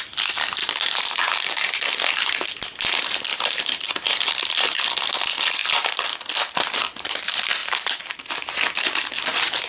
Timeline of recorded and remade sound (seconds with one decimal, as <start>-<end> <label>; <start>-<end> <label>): 0.0-0.6 recorded; 0.6-2.0 remade; 2.0-3.3 recorded; 3.3-4.8 remade; 4.8-7.6 recorded; 7.6-8.3 remade; 8.3-9.7 recorded